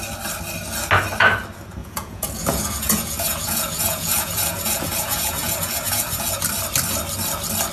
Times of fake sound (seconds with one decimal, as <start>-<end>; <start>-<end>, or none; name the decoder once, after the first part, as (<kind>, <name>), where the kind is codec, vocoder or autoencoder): 1.8-6.4 (vocoder, Vocos)